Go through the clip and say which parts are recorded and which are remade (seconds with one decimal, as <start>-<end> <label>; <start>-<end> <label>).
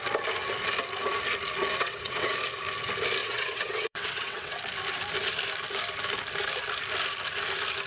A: 0.0-1.8 recorded; 1.8-2.3 remade; 2.3-3.2 recorded; 3.2-4.6 remade; 4.6-7.9 recorded